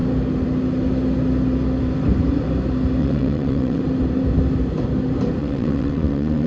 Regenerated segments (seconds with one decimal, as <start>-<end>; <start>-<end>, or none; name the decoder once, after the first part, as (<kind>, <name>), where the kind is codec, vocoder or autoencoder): 3.0-3.8 (vocoder, WaveNeXt); 5.4-6.5